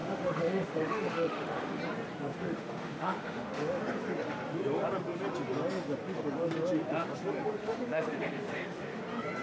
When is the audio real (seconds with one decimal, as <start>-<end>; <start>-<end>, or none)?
1.8-2.3; 3.8-7.6; 9.0-9.4